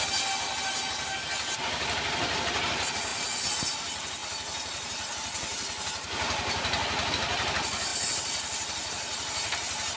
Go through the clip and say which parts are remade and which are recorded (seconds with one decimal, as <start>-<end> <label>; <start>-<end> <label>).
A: 0.0-10.0 recorded